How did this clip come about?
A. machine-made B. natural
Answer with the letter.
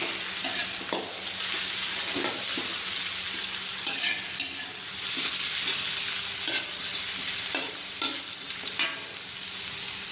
B